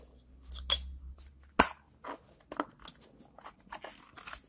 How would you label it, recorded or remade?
recorded